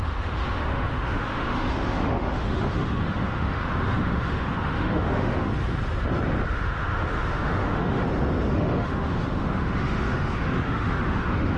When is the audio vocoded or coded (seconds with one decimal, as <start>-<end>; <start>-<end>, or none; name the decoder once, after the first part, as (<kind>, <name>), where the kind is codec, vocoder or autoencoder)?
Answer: 0.0-5.5 (autoencoder, DAC-VAE); 6.5-8.0; 8.5-11.6